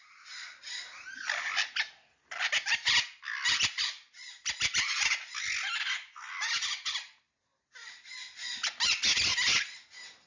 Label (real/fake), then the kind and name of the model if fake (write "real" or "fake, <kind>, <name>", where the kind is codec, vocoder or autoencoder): real